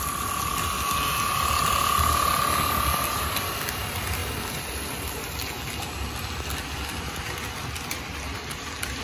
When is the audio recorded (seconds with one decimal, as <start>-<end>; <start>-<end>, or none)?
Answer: 0.0-9.0